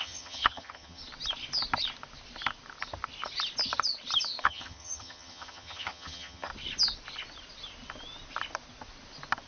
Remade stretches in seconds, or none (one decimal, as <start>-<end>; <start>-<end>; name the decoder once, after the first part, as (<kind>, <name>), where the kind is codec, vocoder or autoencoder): 0.0-1.0 (vocoder, HiFi-GAN); 4.4-6.5